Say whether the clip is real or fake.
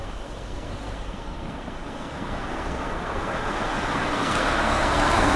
fake